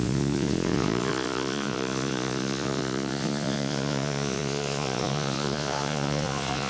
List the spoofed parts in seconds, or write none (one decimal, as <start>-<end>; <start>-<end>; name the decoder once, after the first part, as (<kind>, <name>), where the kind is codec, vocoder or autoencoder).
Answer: 0.0-6.7 (vocoder, Vocos)